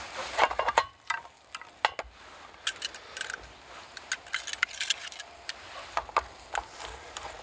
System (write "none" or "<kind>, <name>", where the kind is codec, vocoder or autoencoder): none